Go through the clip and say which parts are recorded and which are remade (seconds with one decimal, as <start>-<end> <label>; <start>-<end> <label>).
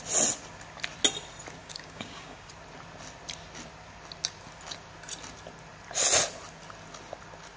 0.0-1.6 recorded; 1.6-2.5 remade; 2.5-7.6 recorded